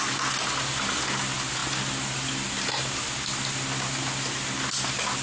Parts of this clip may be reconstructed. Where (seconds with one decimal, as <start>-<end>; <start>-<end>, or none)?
none